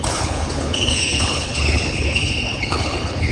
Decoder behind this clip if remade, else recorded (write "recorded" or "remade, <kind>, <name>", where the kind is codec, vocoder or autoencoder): remade, codec, HILCodec